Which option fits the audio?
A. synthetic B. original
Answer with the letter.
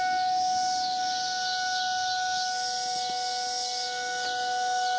B